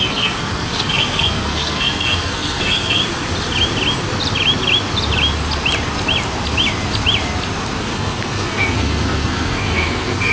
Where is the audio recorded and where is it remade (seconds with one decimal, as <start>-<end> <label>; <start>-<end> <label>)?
0.0-3.0 remade; 3.0-7.8 recorded; 7.8-10.3 remade